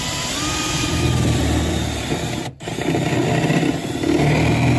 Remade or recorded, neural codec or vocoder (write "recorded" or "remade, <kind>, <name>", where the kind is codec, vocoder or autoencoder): remade, vocoder, BigVGAN v2